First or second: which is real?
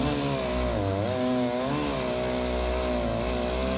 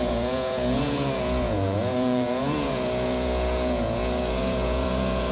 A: first